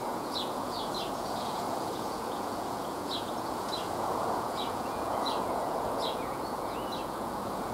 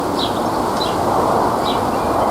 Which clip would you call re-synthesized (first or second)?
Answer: first